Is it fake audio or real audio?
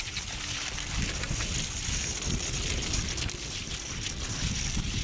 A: real